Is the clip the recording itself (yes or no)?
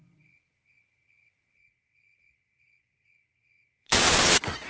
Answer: no